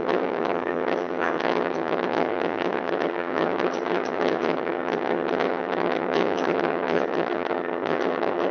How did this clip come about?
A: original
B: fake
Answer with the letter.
B